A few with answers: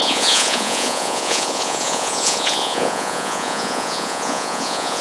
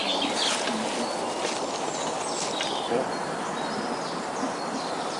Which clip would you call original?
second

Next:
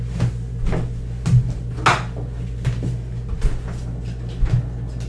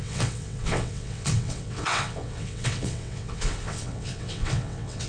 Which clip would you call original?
first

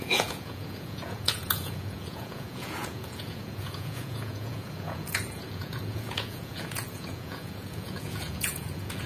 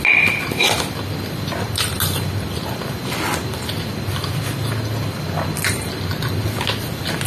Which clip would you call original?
second